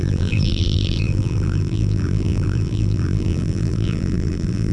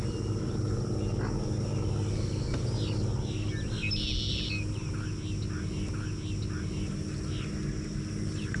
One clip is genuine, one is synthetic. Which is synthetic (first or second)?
first